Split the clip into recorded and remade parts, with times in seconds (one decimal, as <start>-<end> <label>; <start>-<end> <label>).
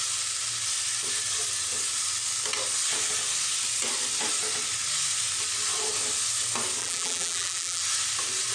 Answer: 0.0-6.8 recorded; 6.8-7.8 remade; 7.8-8.5 recorded